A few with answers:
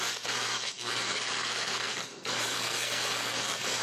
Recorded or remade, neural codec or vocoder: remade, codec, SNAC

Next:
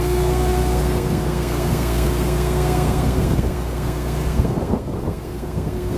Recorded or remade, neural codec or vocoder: remade, codec, SNAC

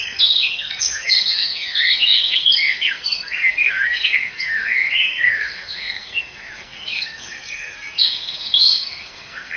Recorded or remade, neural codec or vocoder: remade, codec, SNAC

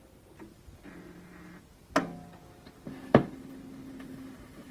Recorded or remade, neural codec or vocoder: recorded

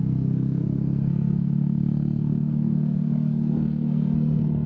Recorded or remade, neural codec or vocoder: remade, codec, SNAC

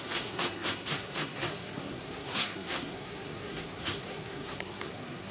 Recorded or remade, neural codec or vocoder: remade, codec, SNAC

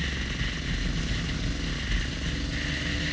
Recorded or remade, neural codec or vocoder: recorded